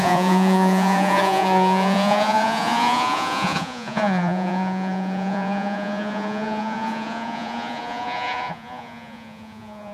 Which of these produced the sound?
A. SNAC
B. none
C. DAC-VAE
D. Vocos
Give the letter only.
D